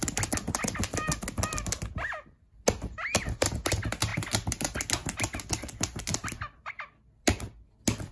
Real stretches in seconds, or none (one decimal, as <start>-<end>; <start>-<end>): 0.0-8.1